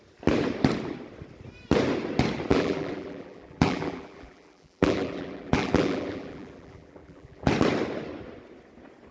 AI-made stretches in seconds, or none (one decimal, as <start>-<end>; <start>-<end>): 2.5-7.5